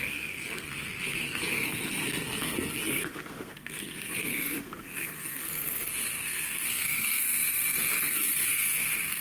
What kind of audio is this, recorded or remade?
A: remade